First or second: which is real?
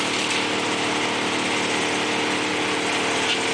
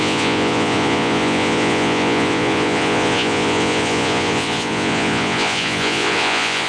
first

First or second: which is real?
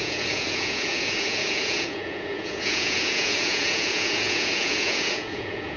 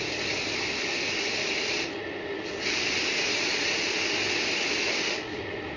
second